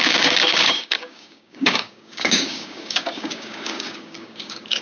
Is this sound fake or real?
fake